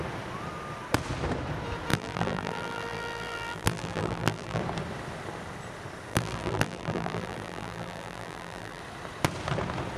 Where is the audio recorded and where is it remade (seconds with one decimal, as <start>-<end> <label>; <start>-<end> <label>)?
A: 0.0-1.9 recorded; 1.9-4.6 remade; 4.6-6.1 recorded; 6.1-8.8 remade; 8.8-10.0 recorded